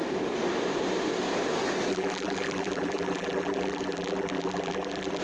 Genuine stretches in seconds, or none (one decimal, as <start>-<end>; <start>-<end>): 0.0-1.9